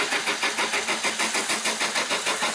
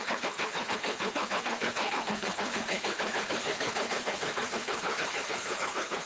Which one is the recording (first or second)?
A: first